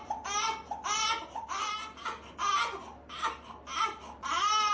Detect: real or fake real